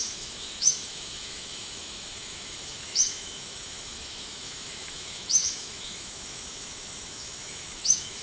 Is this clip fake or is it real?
fake